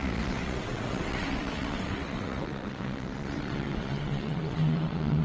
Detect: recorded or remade remade